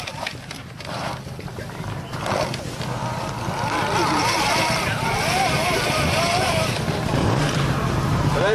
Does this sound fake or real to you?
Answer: fake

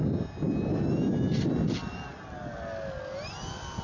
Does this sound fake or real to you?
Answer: real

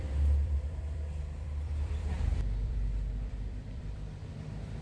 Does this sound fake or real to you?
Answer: fake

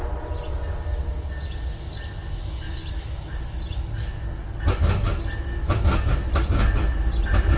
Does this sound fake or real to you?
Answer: real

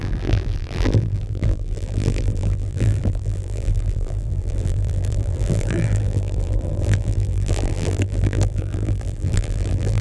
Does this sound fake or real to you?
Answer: fake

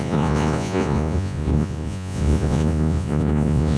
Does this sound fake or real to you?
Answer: fake